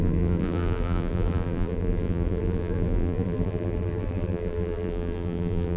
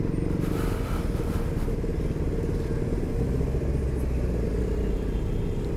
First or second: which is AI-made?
first